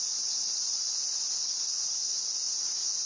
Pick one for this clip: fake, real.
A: real